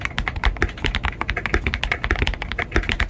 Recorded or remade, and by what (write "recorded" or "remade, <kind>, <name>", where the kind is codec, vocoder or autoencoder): recorded